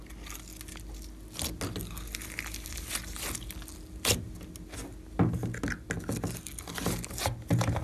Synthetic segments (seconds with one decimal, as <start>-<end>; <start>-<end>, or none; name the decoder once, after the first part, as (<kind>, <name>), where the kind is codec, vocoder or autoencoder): none